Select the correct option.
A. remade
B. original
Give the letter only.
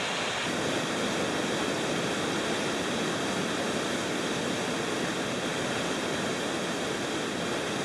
B